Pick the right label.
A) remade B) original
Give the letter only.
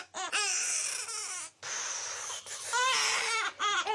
B